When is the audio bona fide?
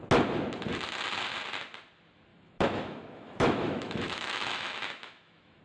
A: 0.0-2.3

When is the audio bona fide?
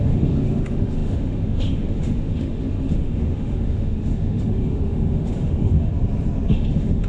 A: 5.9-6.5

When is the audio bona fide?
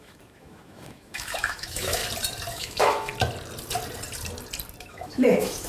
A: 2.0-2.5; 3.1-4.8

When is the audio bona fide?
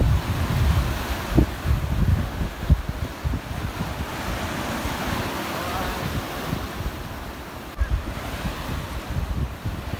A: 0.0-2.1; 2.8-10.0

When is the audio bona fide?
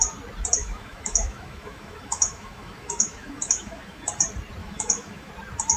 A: 0.0-0.6; 4.1-4.6; 5.3-5.8